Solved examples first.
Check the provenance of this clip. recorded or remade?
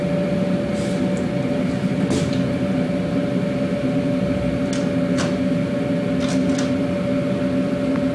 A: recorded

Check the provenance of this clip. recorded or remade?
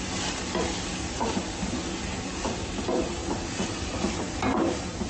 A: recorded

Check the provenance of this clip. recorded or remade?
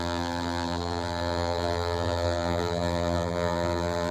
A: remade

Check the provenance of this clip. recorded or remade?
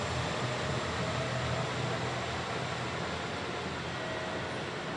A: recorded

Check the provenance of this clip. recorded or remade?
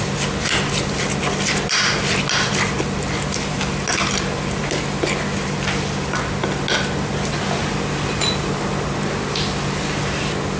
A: recorded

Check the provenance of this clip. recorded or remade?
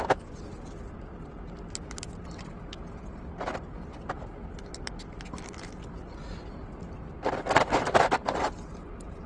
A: recorded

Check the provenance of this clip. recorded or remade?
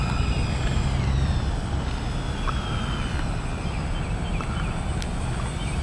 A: recorded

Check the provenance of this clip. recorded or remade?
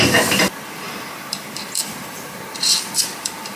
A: remade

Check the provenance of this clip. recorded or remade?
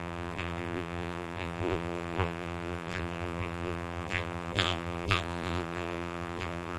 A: remade